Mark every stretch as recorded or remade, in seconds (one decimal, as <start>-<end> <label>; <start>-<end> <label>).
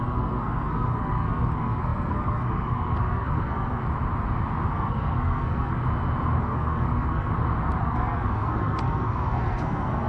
0.0-3.8 remade; 3.8-4.7 recorded; 4.7-5.8 remade; 5.8-6.4 recorded; 6.4-7.3 remade; 7.3-7.8 recorded; 7.8-10.1 remade